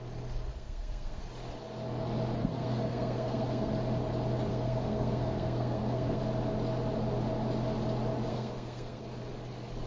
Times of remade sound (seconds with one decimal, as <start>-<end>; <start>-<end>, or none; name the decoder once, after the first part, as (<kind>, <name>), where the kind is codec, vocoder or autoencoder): 0.5-1.2 (codec, SNAC); 2.4-3.7; 4.5-6.2; 8.3-9.0